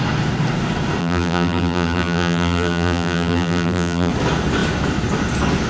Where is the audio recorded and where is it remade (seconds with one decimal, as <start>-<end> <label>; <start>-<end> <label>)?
0.0-1.0 recorded; 1.0-4.1 remade; 4.1-5.7 recorded

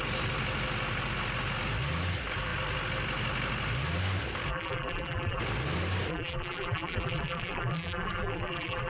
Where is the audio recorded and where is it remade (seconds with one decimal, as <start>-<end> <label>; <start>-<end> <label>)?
0.0-4.5 recorded; 4.5-5.4 remade; 5.4-6.1 recorded; 6.1-8.9 remade

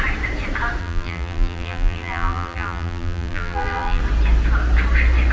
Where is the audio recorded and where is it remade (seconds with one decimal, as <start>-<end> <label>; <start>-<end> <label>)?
0.0-0.8 recorded; 0.8-4.0 remade; 4.0-5.3 recorded